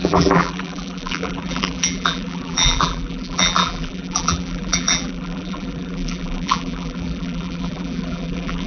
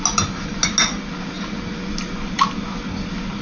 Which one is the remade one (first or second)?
first